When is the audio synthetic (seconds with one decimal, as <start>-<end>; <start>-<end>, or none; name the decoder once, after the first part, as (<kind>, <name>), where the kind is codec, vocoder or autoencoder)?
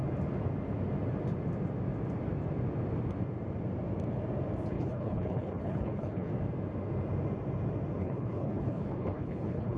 4.7-6.3 (codec, HILCodec); 8.0-9.8